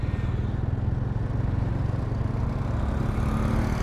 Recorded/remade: recorded